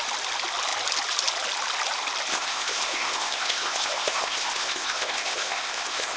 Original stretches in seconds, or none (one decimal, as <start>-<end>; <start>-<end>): 0.0-2.3